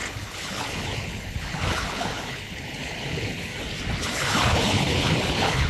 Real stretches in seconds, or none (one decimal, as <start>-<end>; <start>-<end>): 3.5-4.0